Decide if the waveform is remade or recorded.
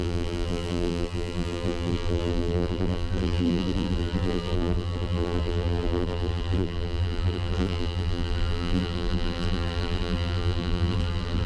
remade